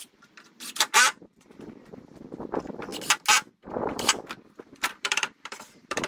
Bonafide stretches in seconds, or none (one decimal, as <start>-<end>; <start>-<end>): 2.9-3.5